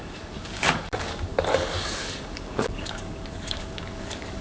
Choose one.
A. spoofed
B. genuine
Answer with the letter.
A